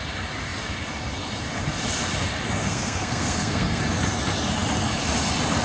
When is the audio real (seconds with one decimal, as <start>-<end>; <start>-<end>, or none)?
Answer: 0.0-2.6; 3.8-5.6